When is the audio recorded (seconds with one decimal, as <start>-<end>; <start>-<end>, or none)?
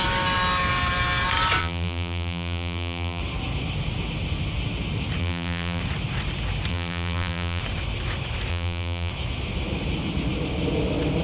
0.0-1.6; 3.2-5.2; 5.8-6.7; 7.6-8.5; 9.1-11.2